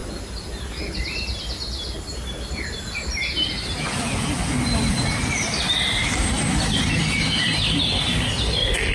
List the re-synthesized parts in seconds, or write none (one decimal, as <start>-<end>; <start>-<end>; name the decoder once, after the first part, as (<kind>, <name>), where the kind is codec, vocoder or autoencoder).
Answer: none